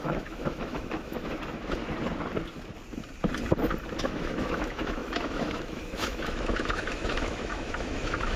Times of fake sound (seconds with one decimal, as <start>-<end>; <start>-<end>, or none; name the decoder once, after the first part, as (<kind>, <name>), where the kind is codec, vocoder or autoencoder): 0.0-1.8 (autoencoder, DAC-VAE); 4.0-8.4